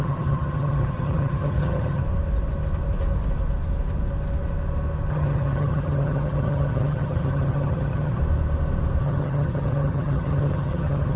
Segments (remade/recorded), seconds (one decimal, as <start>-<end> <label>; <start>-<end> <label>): 0.0-2.0 remade; 2.0-5.1 recorded; 5.1-8.2 remade; 8.2-9.0 recorded; 9.0-11.2 remade